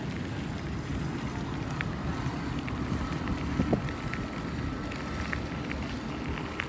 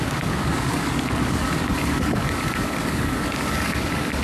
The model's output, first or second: second